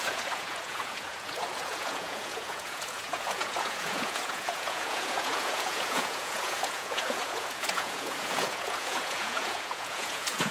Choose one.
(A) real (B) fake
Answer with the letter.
B